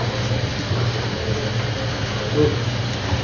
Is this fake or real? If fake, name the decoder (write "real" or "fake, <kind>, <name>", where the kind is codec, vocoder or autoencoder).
real